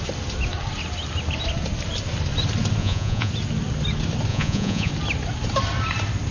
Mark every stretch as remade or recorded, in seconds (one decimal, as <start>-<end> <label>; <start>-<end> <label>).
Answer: 0.0-2.8 recorded; 2.8-3.3 remade; 3.3-4.3 recorded; 4.3-4.9 remade; 4.9-6.3 recorded